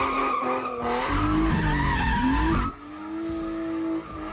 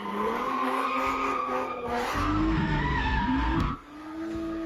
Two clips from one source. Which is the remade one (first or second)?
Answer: second